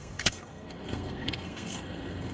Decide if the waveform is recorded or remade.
remade